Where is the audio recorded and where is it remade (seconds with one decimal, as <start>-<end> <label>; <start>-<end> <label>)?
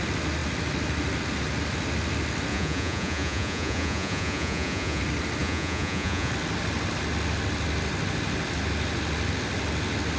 0.0-2.5 recorded; 2.5-5.0 remade; 5.0-5.4 recorded; 5.4-6.3 remade; 6.3-10.2 recorded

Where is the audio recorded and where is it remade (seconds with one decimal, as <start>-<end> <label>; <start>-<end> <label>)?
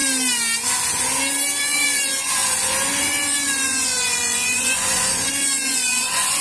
0.0-1.6 recorded; 1.6-6.4 remade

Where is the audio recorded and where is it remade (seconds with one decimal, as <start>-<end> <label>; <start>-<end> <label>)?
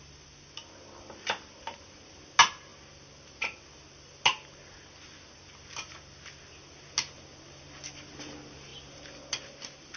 0.0-10.0 recorded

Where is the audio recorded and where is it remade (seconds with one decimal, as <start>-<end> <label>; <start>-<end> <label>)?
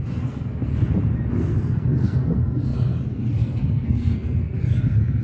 0.0-0.7 remade; 0.7-1.3 recorded; 1.3-5.2 remade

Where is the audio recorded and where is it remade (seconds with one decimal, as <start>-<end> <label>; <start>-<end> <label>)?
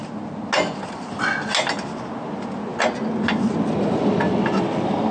0.0-5.1 recorded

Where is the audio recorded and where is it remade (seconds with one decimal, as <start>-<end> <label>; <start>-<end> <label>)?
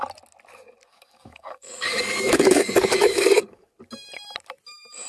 0.0-0.9 recorded; 0.9-3.7 remade; 3.7-5.1 recorded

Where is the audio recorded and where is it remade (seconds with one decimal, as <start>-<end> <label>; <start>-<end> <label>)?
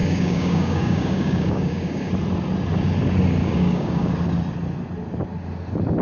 0.0-2.1 remade; 2.1-3.4 recorded; 3.4-4.1 remade; 4.1-6.0 recorded